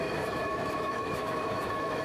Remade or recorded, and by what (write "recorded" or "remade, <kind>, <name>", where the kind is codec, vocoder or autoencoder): remade, autoencoder, DAC-VAE